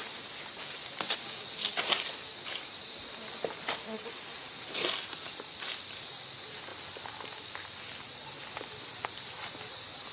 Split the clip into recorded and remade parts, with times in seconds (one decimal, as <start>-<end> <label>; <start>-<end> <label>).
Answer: 0.0-10.1 recorded